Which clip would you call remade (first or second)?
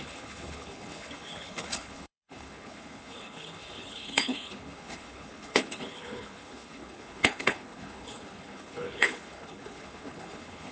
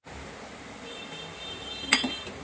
first